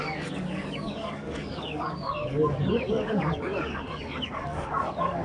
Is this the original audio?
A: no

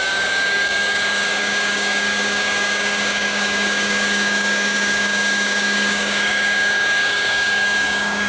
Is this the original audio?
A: no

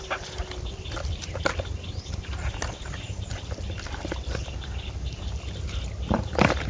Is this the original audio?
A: yes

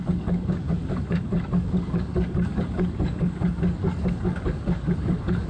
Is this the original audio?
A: no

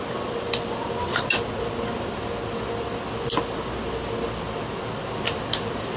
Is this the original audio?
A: yes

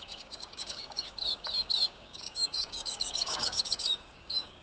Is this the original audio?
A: no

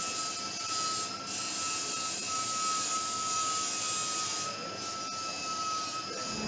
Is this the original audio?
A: yes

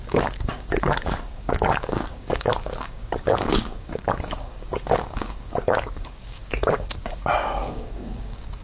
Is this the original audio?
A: no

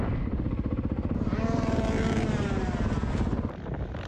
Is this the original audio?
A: yes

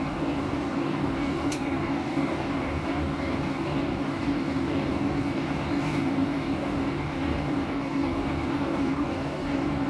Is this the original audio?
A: no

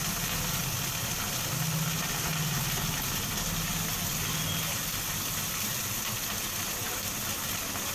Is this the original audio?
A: yes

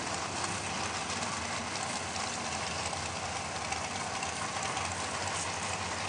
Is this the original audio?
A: yes